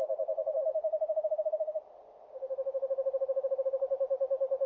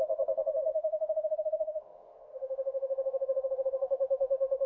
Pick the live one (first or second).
first